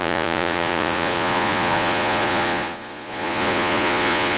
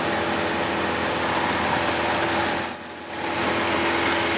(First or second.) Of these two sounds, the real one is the second